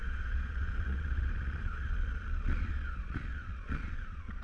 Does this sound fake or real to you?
fake